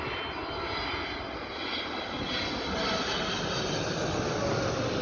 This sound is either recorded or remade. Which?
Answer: recorded